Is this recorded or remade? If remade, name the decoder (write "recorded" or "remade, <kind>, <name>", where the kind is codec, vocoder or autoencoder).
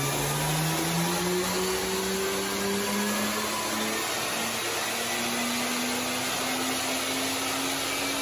recorded